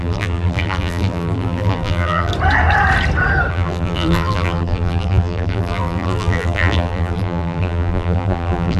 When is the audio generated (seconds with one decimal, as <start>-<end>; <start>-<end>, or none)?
0.0-2.3; 3.5-8.8